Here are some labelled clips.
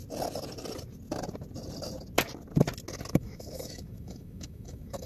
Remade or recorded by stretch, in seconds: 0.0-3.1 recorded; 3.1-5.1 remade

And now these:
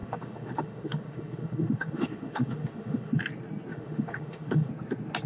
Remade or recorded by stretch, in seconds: 0.0-3.2 remade; 3.2-3.7 recorded; 3.7-4.7 remade; 4.7-5.3 recorded

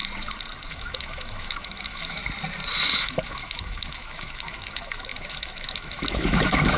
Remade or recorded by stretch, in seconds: 0.0-0.7 recorded; 0.7-2.2 remade; 2.2-3.0 recorded; 3.0-6.8 remade

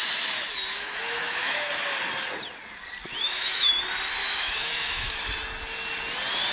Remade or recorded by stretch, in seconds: 0.0-0.7 recorded; 0.7-1.7 remade; 1.7-3.2 recorded; 3.2-3.7 remade; 3.7-4.2 recorded; 4.2-5.2 remade; 5.2-6.5 recorded

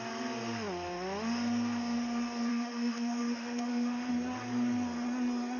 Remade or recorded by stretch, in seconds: 0.0-2.5 recorded; 2.5-4.1 remade; 4.1-5.6 recorded

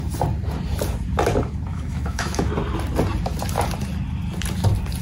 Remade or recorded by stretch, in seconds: 0.0-1.7 recorded; 1.7-2.5 remade; 2.5-5.0 recorded